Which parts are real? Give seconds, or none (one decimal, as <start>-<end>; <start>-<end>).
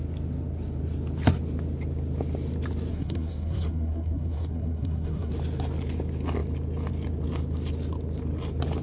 0.0-2.9; 5.3-8.8